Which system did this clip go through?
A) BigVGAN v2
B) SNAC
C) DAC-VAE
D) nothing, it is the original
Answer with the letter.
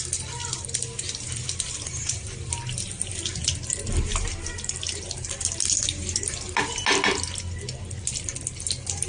D